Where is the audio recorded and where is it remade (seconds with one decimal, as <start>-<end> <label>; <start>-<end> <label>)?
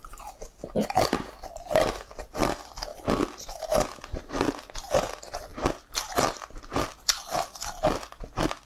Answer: 0.0-8.7 recorded